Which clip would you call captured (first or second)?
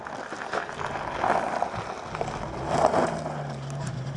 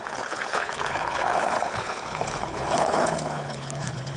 first